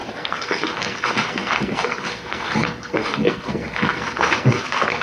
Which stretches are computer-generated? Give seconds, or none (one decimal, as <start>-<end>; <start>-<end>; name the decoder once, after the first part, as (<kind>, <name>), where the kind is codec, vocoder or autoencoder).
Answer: 0.0-5.0 (codec, SNAC)